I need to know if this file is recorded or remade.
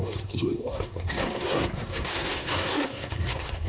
remade